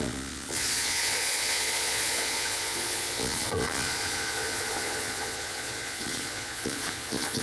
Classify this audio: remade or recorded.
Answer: remade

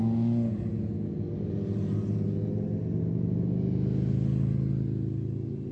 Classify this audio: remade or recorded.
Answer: recorded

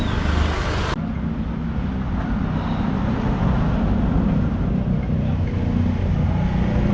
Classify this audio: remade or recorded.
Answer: recorded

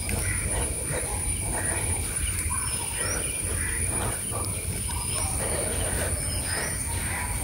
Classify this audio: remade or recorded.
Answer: recorded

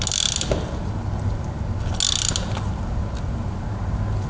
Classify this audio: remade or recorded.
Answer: recorded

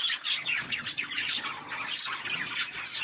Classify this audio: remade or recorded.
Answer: remade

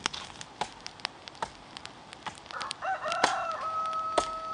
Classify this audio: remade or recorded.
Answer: recorded